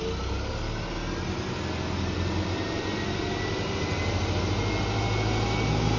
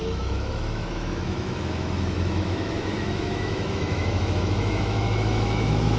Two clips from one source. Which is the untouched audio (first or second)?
first